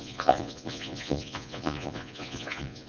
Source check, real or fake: fake